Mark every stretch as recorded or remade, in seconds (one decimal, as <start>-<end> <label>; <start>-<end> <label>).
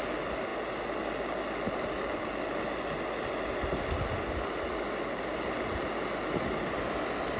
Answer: 0.0-7.4 recorded